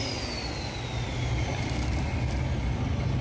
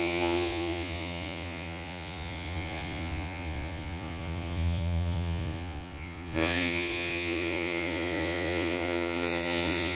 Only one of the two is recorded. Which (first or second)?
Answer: first